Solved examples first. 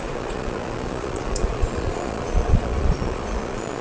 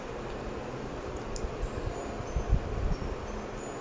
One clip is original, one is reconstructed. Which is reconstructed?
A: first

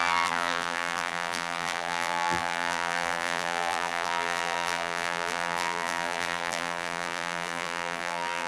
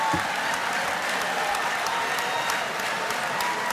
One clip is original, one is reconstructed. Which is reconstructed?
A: first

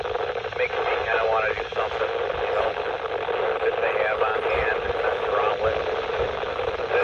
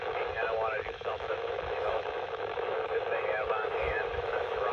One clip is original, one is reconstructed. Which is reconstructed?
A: second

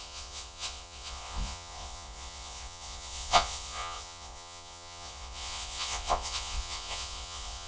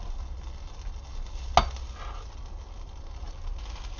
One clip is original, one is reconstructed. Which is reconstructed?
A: first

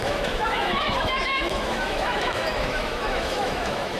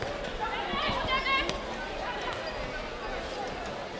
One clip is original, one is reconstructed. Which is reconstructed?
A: first